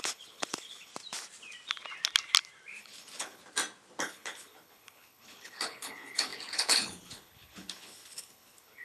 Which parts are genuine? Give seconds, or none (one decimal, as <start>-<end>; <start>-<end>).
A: 0.9-2.8; 3.4-4.0